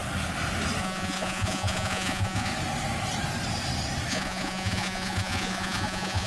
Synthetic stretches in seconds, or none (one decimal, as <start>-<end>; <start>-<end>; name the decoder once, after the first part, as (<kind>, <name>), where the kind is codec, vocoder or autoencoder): 0.8-2.5 (vocoder, Vocos); 4.1-6.3